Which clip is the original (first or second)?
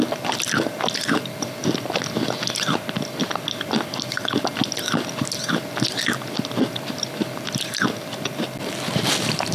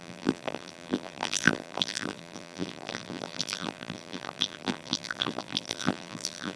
first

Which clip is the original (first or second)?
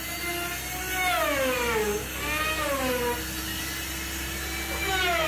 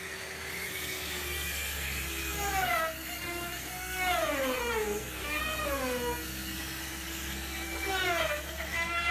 first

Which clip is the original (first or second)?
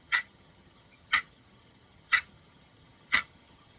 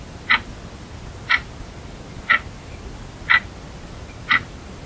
second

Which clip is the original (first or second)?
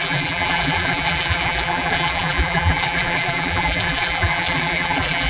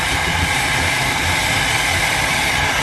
second